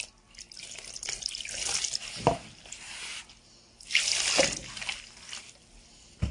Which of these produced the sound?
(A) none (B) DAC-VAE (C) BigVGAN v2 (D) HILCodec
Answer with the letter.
A